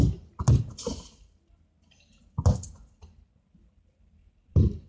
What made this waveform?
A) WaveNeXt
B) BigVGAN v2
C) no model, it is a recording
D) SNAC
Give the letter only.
C